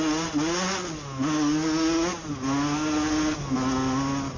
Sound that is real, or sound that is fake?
real